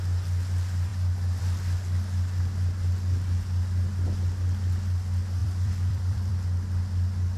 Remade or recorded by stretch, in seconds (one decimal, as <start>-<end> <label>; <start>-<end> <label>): 0.0-5.4 recorded; 5.4-6.3 remade; 6.3-7.4 recorded